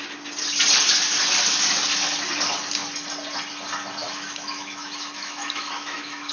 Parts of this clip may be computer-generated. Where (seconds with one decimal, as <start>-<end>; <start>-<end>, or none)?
4.0-6.3